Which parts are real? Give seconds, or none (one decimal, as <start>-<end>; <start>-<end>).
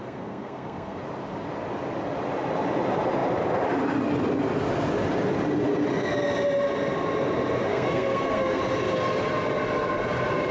1.0-7.7; 8.6-10.5